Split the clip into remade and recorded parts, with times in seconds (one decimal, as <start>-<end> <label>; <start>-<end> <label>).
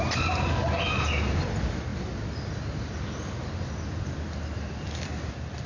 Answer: 0.0-5.7 recorded